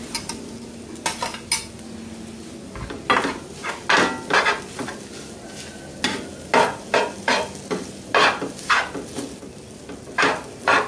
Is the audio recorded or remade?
recorded